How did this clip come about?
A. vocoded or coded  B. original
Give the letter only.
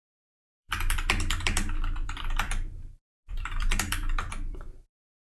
A